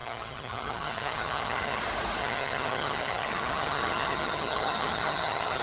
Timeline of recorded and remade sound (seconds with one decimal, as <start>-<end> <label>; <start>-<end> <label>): 0.0-1.8 remade; 1.8-2.2 recorded; 2.2-5.6 remade